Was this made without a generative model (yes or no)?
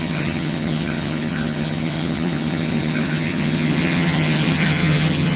no